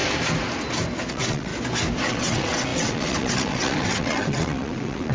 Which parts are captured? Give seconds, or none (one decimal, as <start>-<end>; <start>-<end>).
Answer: 0.0-1.1; 1.5-2.1